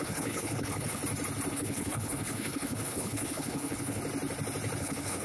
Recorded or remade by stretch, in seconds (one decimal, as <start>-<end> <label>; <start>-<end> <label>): 0.0-1.0 remade; 1.0-1.5 recorded; 1.5-4.0 remade; 4.0-4.8 recorded; 4.8-5.2 remade